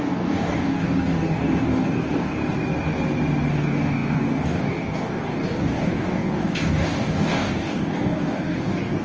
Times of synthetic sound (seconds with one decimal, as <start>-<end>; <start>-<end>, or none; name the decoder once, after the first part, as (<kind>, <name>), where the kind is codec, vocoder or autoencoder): 0.0-2.4 (codec, DAC); 3.5-9.0